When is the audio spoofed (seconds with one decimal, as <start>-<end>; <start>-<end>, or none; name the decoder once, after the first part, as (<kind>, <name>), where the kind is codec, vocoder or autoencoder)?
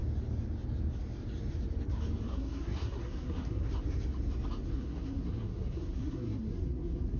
2.3-3.7 (codec, SNAC); 4.7-7.2